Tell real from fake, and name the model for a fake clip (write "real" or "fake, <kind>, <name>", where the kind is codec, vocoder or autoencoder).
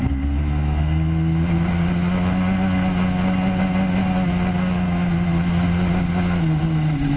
real